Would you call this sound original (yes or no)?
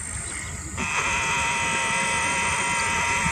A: yes